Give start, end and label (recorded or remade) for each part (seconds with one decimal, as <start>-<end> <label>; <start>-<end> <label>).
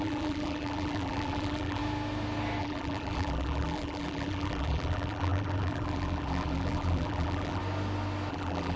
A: 0.0-1.8 remade; 1.8-2.6 recorded; 2.6-7.6 remade; 7.6-8.3 recorded; 8.3-8.8 remade